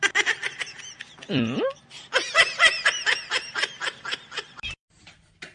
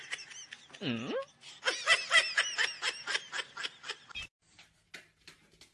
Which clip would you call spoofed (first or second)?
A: first